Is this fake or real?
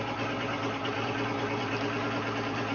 real